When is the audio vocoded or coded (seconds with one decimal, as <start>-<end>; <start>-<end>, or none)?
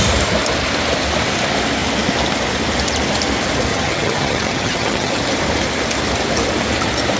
3.7-5.2